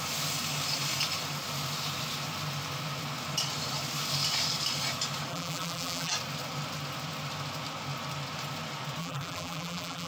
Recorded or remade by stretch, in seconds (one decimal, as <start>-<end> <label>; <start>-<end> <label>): 0.0-5.3 recorded; 5.3-6.1 remade; 6.1-9.0 recorded; 9.0-10.1 remade